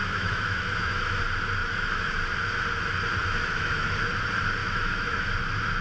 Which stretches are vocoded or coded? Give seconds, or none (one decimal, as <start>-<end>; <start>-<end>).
0.0-1.2; 1.6-2.1; 3.2-4.0; 4.6-5.3